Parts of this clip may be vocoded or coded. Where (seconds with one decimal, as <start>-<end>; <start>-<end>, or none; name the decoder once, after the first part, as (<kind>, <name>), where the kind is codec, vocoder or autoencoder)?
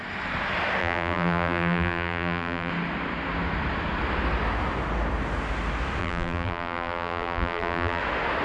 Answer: 0.8-2.7 (vocoder, BigVGAN v2); 6.0-8.0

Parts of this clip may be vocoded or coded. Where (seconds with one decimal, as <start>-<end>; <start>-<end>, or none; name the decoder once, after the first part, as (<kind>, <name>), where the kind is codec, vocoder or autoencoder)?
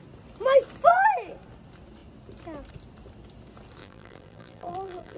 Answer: 3.8-5.2 (vocoder, BigVGAN v2)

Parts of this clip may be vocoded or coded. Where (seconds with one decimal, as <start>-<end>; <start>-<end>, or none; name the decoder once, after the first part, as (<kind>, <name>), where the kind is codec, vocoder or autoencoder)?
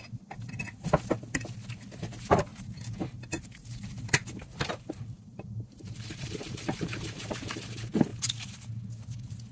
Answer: 2.5-7.6 (vocoder, BigVGAN v2)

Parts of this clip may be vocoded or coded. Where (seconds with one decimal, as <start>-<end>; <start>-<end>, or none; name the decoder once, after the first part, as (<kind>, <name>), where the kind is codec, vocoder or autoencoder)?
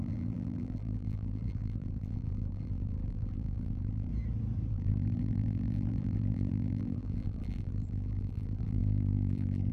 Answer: 0.0-4.1 (vocoder, BigVGAN v2); 4.7-9.7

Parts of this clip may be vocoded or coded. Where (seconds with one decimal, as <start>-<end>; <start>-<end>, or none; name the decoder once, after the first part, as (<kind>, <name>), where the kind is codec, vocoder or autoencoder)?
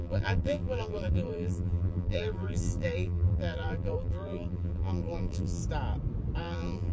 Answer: 0.0-5.6 (vocoder, BigVGAN v2); 6.4-6.9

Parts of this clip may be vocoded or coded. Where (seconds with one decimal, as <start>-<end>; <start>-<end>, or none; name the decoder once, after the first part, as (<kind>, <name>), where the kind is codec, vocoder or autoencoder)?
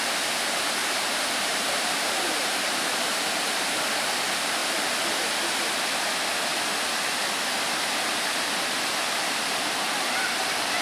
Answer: 0.8-3.8 (vocoder, BigVGAN v2)